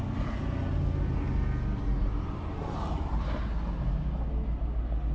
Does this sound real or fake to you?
real